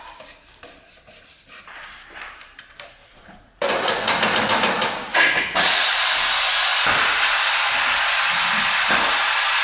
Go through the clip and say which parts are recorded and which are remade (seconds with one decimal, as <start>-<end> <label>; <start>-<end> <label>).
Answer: 0.0-3.0 recorded; 3.0-3.7 remade; 3.7-5.1 recorded; 5.1-5.9 remade; 5.9-9.6 recorded